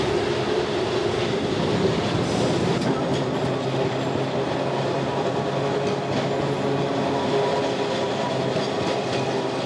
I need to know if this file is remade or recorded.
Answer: recorded